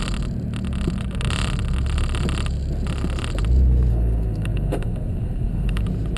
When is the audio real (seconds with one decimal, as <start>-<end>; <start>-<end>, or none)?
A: 0.0-3.9; 5.8-6.2